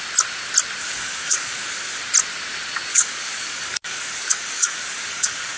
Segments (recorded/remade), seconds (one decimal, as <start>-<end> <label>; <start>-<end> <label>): 0.0-0.8 recorded; 0.8-2.0 remade; 2.0-2.9 recorded; 2.9-5.6 remade